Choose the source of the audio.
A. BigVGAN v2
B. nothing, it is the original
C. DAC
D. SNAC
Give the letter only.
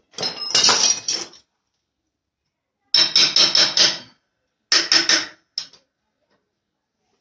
B